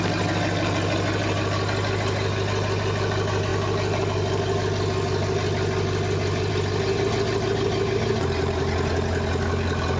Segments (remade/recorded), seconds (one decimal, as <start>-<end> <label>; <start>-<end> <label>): 0.0-10.0 recorded